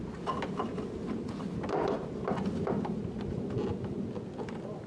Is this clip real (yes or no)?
yes